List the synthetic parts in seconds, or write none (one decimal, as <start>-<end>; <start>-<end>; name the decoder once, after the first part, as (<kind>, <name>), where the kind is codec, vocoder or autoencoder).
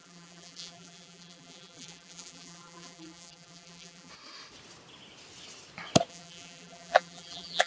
0.0-4.1 (vocoder, BigVGAN v2); 6.1-7.7